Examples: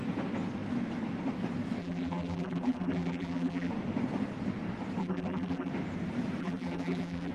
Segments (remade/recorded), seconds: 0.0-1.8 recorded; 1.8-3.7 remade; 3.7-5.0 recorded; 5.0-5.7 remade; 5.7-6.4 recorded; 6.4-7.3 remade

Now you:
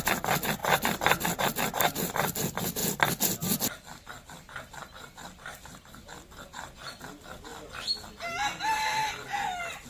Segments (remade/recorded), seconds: 0.0-0.6 recorded; 0.6-1.4 remade; 1.4-9.9 recorded

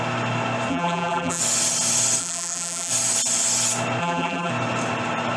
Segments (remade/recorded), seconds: 0.0-0.7 recorded; 0.7-1.4 remade; 1.4-2.2 recorded; 2.2-2.9 remade; 2.9-4.0 recorded; 4.0-4.5 remade; 4.5-5.4 recorded

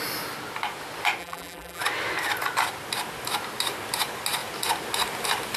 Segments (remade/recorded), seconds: 0.0-1.2 recorded; 1.2-1.8 remade; 1.8-5.6 recorded

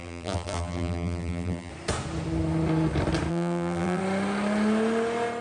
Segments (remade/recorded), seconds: 0.0-1.7 remade; 1.7-3.3 recorded; 3.3-4.0 remade; 4.0-5.4 recorded

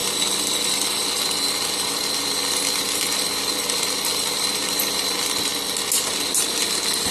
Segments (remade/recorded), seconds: 0.0-5.5 remade; 5.5-6.0 recorded; 6.0-7.1 remade